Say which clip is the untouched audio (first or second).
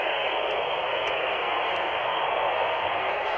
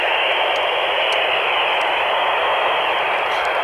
second